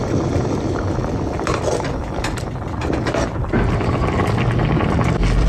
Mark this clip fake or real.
fake